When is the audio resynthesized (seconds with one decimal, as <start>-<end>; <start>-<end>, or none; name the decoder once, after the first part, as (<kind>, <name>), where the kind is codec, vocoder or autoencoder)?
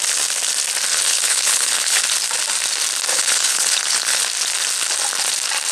0.9-2.0 (codec, HILCodec); 3.1-4.2